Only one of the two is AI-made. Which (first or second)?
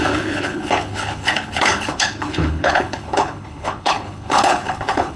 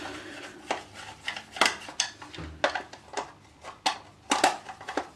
first